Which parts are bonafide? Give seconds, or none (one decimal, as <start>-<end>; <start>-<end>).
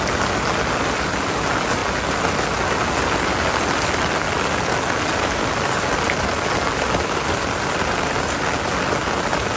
0.0-9.6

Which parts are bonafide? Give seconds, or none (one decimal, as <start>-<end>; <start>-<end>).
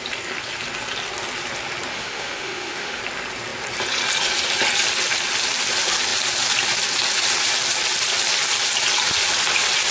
0.0-1.9; 3.0-9.9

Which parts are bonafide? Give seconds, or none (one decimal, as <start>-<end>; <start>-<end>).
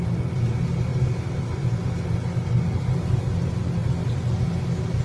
0.0-5.0